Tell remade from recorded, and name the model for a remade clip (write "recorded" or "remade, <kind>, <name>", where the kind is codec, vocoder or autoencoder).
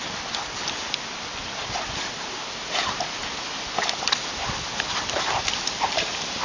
recorded